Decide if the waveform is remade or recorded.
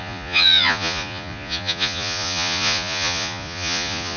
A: remade